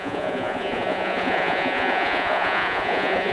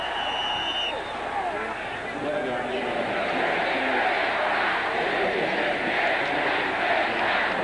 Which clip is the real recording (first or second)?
second